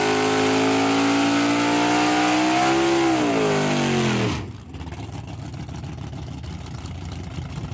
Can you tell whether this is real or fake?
real